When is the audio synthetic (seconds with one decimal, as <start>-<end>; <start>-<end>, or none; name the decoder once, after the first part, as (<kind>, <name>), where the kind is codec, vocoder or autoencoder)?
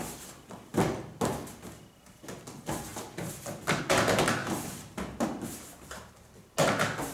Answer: 4.4-6.1 (vocoder, BigVGAN v2)